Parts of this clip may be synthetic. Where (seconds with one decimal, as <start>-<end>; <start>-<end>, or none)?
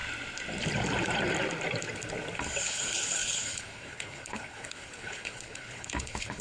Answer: 2.6-6.4